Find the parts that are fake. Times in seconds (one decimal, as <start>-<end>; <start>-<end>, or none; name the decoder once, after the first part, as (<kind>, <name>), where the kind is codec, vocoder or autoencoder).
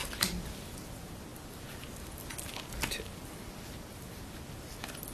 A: none